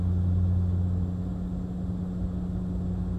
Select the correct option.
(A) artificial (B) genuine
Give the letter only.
B